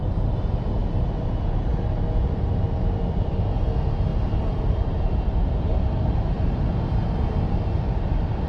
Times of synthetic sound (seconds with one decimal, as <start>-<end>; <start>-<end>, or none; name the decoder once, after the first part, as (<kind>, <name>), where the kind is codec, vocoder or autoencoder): 0.8-2.6 (vocoder, BigVGAN v2); 4.1-7.4